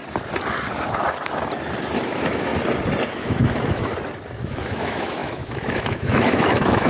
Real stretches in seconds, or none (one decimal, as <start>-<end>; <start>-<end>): 0.0-2.0; 2.5-3.1; 3.9-4.4

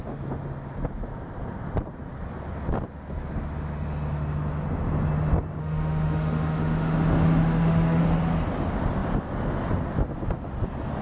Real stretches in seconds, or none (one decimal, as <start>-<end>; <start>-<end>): 0.0-5.6; 8.0-11.0

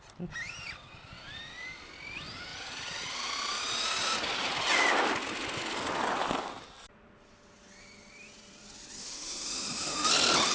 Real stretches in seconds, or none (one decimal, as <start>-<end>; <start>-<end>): 0.0-9.0; 10.1-10.5

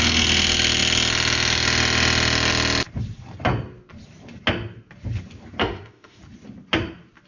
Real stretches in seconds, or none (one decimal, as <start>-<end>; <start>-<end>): 0.0-5.6; 6.2-7.3